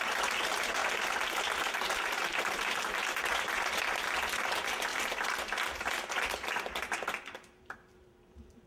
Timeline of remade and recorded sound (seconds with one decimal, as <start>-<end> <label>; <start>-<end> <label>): 0.0-0.8 remade; 0.8-1.7 recorded; 1.7-2.2 remade; 2.2-4.3 recorded; 4.3-4.9 remade; 4.9-7.3 recorded; 7.3-8.7 remade

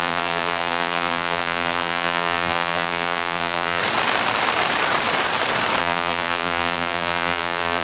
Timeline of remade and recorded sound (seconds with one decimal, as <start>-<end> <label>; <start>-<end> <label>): 0.0-3.8 remade; 3.8-5.8 recorded; 5.8-7.8 remade

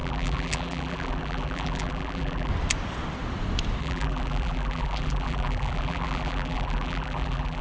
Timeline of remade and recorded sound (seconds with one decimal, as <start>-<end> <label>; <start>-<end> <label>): 0.0-2.5 remade; 2.5-3.8 recorded; 3.8-7.6 remade